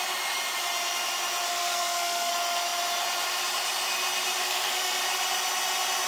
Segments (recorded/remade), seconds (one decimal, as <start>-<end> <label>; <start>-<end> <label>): 0.0-1.5 recorded; 1.5-2.3 remade; 2.3-4.4 recorded; 4.4-5.0 remade; 5.0-6.1 recorded